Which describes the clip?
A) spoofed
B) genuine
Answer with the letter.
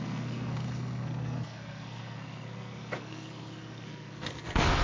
A